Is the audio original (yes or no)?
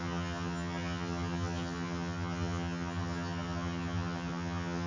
no